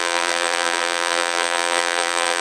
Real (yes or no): no